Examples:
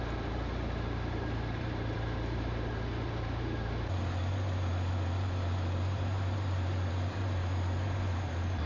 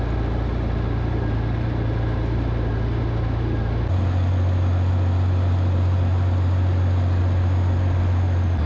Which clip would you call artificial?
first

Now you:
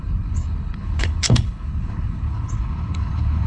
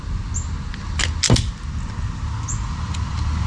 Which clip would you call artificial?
first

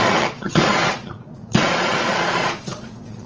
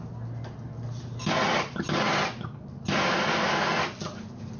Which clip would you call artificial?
first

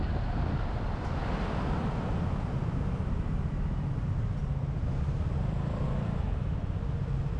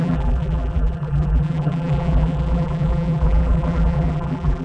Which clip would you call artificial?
second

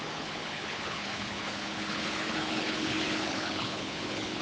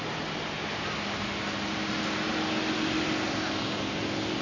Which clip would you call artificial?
first